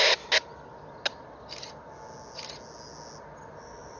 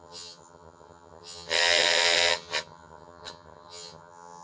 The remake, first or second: second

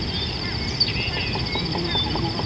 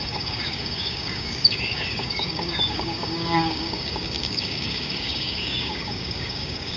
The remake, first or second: second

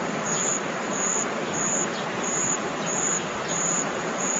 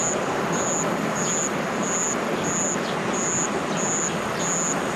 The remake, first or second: first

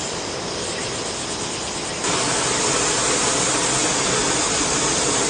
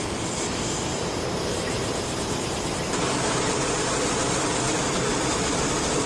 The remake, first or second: second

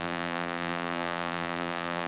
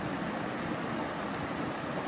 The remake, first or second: first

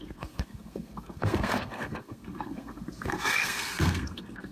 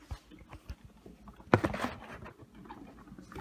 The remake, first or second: first